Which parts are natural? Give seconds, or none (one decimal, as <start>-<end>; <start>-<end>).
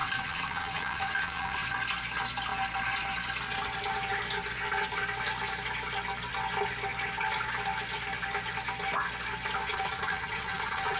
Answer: 1.7-9.7